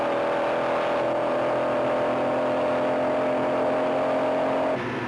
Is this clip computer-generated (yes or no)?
no